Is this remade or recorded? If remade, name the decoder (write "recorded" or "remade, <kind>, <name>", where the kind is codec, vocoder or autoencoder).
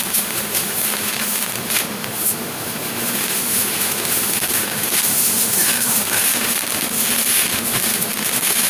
remade, autoencoder, DAC-VAE